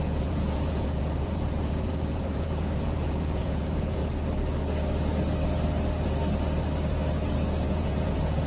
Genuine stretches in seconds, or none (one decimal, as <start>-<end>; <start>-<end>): 4.0-7.7

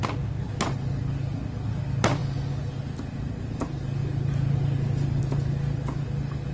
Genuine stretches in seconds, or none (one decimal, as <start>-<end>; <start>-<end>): 0.0-6.5